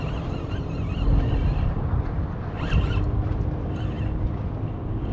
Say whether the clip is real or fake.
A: fake